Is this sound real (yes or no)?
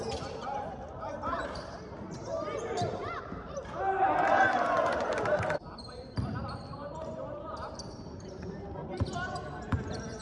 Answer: no